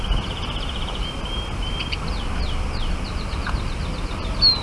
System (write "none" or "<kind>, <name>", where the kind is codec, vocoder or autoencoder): none